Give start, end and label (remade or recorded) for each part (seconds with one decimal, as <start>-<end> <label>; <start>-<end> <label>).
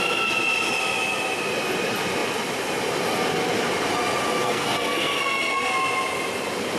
0.0-4.4 recorded; 4.4-5.7 remade; 5.7-6.8 recorded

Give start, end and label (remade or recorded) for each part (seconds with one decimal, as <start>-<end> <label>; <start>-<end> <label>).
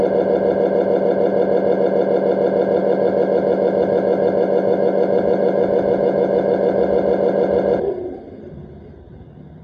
0.0-2.8 recorded; 2.8-6.8 remade; 6.8-9.6 recorded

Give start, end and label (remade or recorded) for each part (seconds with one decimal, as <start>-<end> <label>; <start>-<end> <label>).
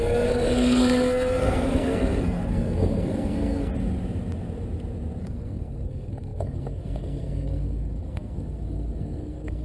0.0-3.7 remade; 3.7-5.2 recorded; 5.2-9.6 remade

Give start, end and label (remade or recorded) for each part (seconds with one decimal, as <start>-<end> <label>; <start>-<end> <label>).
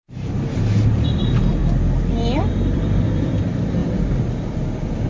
0.0-1.6 remade; 1.6-2.4 recorded; 2.4-5.1 remade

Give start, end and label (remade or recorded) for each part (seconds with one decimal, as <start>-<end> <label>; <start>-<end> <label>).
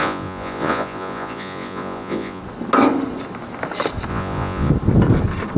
0.0-2.4 remade; 2.4-4.1 recorded; 4.1-4.7 remade; 4.7-5.6 recorded